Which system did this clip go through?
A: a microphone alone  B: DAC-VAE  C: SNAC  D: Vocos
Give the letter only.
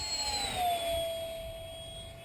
A